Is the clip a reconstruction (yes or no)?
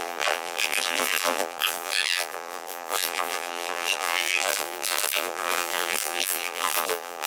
yes